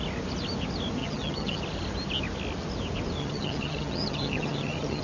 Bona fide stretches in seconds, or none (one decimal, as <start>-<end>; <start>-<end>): 0.0-1.0; 1.6-3.2